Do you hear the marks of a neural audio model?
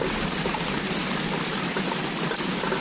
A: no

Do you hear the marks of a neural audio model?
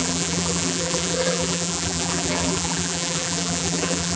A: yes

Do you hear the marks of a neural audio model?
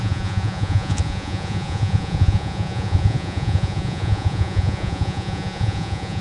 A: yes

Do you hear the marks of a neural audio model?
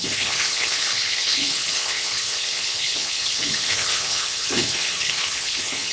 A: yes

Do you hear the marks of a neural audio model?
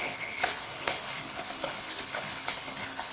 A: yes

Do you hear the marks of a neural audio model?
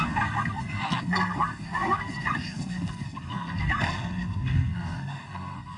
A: yes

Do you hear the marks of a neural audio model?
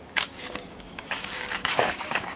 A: yes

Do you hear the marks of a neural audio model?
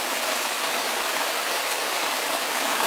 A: yes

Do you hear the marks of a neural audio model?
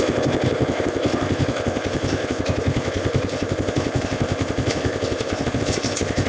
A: yes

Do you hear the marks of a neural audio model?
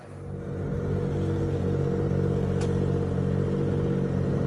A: no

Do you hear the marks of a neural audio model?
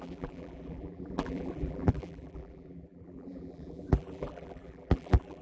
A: yes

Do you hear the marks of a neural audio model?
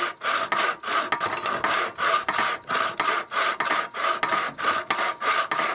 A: no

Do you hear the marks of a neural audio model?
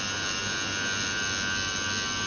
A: no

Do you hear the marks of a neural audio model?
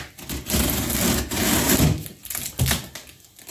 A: no